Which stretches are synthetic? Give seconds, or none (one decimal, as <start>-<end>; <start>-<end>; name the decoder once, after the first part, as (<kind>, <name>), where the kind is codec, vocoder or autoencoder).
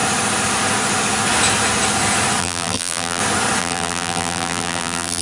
2.4-3.2 (vocoder, BigVGAN v2); 3.6-5.2